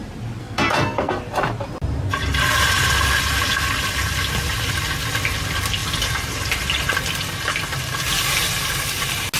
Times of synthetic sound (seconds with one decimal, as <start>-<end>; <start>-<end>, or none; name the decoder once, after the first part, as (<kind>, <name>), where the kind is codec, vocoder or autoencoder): 0.4-1.2 (codec, SNAC)